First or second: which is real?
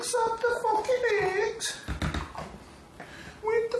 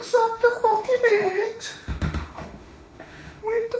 first